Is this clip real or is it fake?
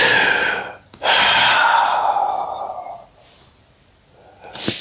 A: real